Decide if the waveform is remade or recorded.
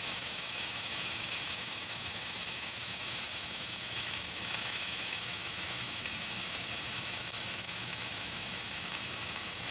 remade